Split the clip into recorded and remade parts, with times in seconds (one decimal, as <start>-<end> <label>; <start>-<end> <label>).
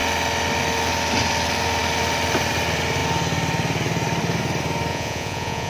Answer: 0.0-4.9 recorded; 4.9-5.7 remade